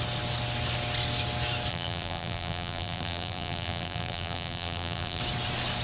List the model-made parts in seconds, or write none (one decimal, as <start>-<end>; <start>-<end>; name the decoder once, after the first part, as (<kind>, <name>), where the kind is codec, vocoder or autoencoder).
1.7-5.2 (vocoder, BigVGAN v2)